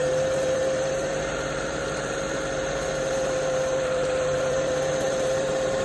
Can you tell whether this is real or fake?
fake